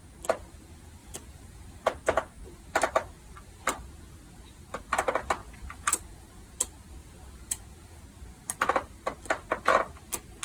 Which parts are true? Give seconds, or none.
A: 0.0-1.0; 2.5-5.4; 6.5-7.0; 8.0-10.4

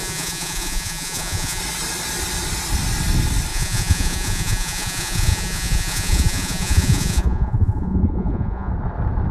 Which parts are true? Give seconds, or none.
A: 1.6-3.5; 8.7-9.3

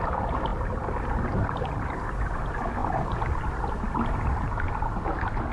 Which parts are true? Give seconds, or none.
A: 0.0-5.5

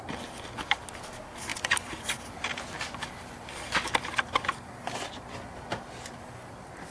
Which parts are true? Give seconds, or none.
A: 0.0-6.9

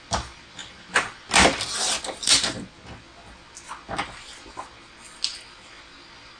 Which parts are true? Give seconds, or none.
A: 0.0-6.4

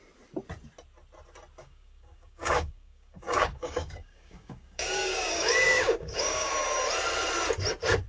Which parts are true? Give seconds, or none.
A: 0.0-1.6; 6.5-8.1

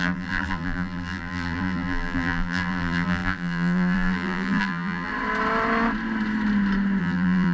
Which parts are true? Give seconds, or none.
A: 5.1-7.0

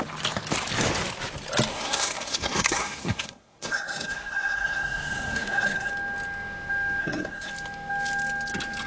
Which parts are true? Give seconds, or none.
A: 0.0-1.7; 5.9-7.0; 7.5-8.9